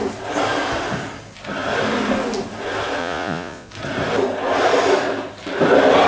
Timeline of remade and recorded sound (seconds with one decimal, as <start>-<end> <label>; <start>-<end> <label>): 0.0-3.0 recorded; 3.0-3.7 remade; 3.7-6.1 recorded